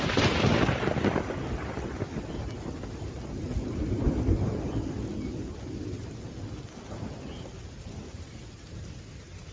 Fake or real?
real